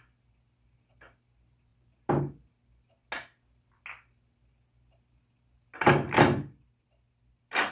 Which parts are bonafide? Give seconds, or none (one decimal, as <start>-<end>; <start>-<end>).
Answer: 0.0-7.7